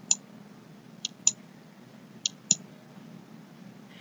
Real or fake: real